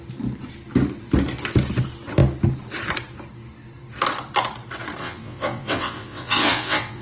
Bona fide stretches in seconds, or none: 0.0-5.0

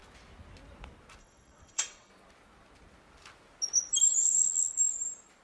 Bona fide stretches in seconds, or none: 0.0-1.2; 2.1-4.2; 4.8-5.4

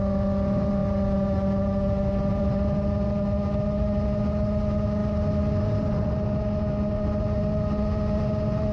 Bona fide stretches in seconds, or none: 0.0-8.7